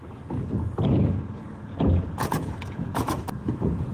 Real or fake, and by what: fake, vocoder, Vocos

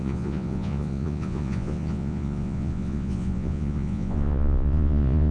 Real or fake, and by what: fake, vocoder, Vocos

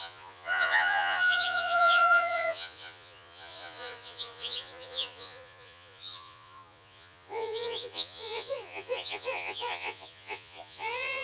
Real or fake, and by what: fake, vocoder, Vocos